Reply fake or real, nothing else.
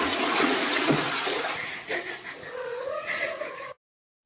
fake